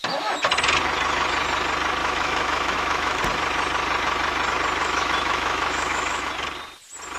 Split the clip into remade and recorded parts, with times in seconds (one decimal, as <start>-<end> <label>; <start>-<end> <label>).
0.0-2.0 recorded; 2.0-3.2 remade; 3.2-4.8 recorded; 4.8-6.3 remade; 6.3-7.2 recorded